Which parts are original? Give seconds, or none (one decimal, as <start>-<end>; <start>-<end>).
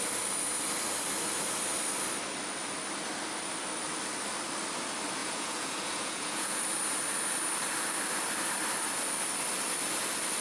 0.0-5.2; 6.6-10.4